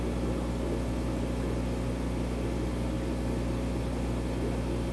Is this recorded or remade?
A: recorded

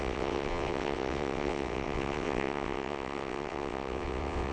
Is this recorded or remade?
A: remade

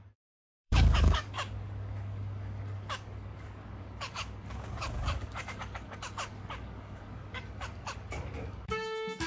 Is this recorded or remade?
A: remade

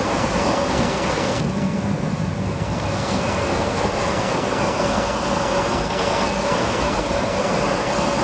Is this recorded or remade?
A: remade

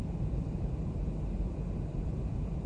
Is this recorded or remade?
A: remade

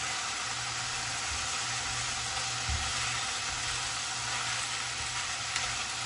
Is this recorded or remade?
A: recorded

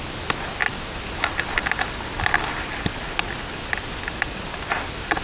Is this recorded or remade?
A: recorded